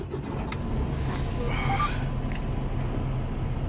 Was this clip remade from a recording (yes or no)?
no